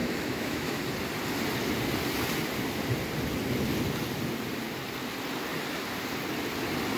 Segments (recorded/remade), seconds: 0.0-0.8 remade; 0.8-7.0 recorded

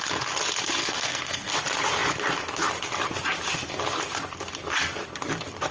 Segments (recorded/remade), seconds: 0.0-0.8 recorded; 0.8-1.5 remade; 1.5-5.7 recorded

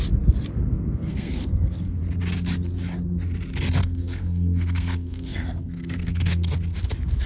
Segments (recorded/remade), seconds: 0.0-0.5 recorded; 0.5-2.0 remade; 2.0-3.8 recorded; 3.8-6.5 remade; 6.5-7.3 recorded

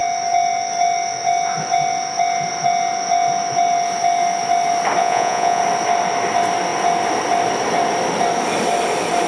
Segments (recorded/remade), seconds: 0.0-5.0 recorded; 5.0-5.6 remade; 5.6-9.3 recorded

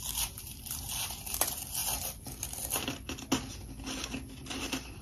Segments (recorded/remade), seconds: 0.0-5.0 recorded